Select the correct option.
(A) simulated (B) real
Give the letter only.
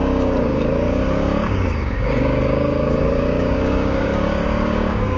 A